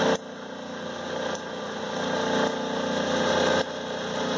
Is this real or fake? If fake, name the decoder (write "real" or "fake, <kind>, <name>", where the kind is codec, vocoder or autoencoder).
real